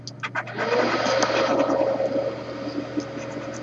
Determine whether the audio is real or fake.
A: real